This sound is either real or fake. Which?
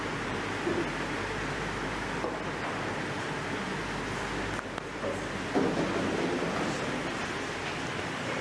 real